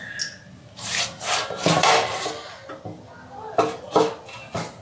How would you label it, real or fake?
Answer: real